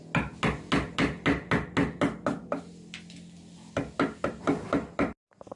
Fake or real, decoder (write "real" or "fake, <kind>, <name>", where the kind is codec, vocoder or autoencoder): real